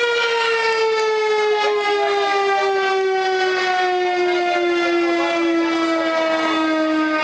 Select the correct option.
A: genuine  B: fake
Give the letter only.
A